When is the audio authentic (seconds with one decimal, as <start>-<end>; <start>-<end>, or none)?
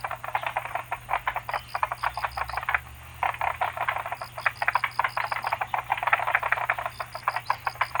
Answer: 0.0-8.0